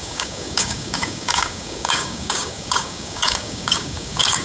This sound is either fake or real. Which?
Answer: fake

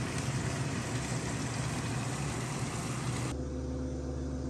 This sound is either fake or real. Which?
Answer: real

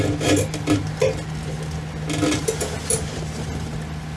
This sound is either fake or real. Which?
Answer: real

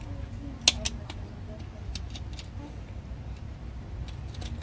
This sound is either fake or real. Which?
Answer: real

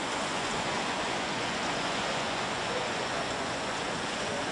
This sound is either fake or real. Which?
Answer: fake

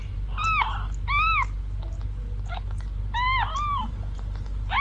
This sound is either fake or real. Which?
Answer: real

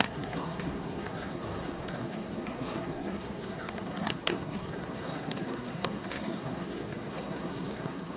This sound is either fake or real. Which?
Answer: fake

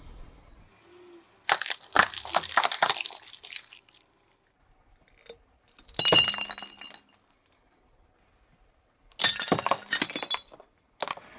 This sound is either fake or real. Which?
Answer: real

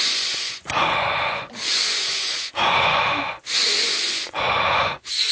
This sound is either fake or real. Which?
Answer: fake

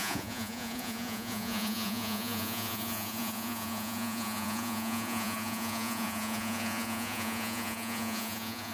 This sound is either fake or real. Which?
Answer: fake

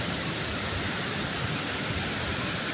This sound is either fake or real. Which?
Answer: fake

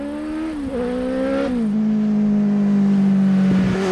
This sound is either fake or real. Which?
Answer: real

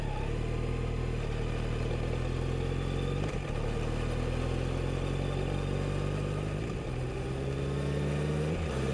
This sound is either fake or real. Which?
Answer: real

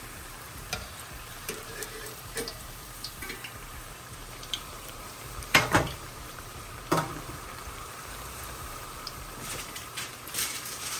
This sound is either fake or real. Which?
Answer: fake